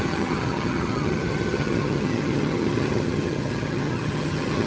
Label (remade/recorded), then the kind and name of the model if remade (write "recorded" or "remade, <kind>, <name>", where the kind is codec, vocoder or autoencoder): remade, vocoder, HiFi-GAN